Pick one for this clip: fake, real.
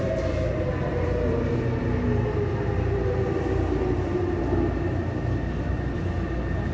real